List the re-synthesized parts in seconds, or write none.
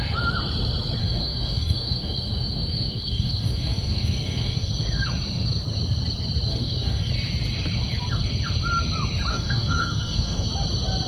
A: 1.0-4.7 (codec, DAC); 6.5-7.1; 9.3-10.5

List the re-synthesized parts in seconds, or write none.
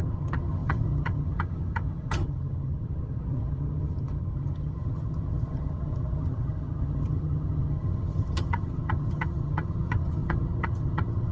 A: 0.0-11.3 (vocoder, HiFi-GAN)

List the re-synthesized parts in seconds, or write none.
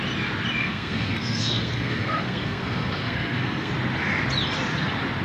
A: 0.6-3.7 (codec, SNAC)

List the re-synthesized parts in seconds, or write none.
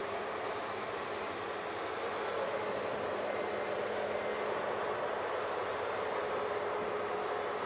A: none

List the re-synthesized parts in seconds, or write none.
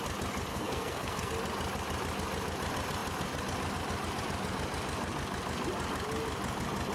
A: 0.5-1.3 (codec, SNAC)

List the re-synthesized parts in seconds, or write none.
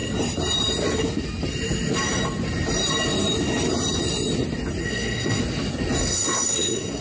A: 4.8-5.4 (codec, SNAC); 6.0-7.0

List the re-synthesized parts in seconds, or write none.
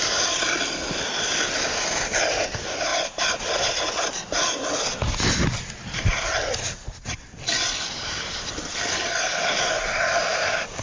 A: none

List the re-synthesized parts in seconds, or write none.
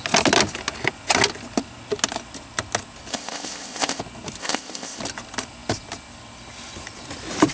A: 3.1-4.0 (codec, ZipCodec); 4.4-5.0